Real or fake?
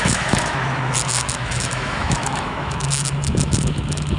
fake